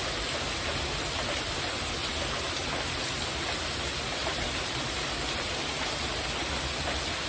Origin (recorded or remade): recorded